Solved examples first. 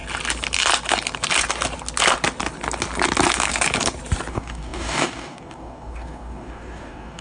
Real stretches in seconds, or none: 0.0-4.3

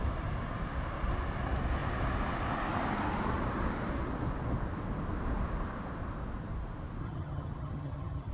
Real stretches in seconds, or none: 0.0-7.0

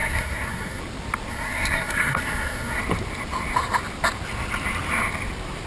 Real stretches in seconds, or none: 0.8-1.3; 2.8-5.7

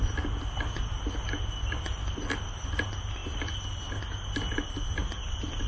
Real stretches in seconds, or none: 0.0-5.7